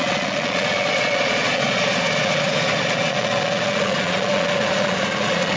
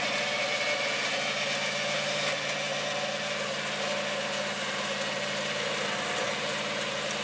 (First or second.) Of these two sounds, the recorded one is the second